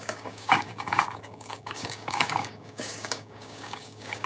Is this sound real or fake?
fake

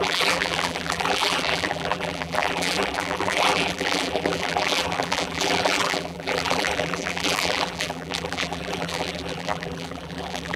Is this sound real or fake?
fake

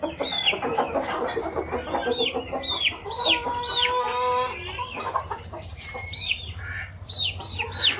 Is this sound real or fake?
real